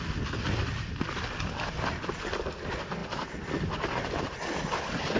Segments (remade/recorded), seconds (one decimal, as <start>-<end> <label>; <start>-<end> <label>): 0.0-5.2 recorded